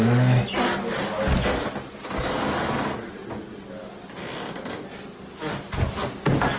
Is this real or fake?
real